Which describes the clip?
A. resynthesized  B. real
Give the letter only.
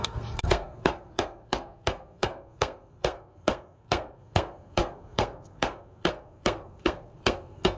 A